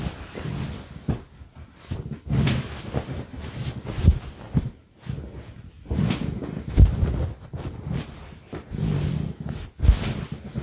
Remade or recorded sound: recorded